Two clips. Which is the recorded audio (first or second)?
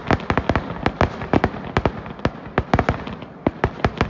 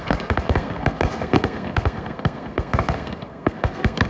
first